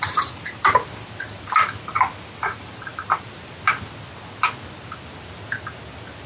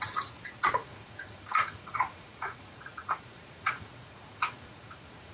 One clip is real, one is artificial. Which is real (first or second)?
first